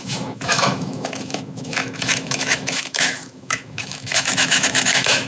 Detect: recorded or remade remade